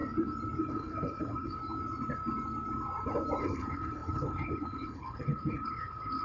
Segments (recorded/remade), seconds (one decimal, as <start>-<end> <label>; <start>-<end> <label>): 0.0-0.6 recorded; 0.6-1.6 remade; 1.6-3.4 recorded; 3.4-6.2 remade